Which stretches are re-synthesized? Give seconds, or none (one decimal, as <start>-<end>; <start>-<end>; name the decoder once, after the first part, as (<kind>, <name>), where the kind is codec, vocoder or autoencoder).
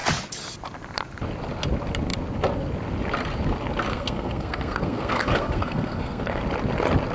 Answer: 3.9-6.4 (codec, SNAC)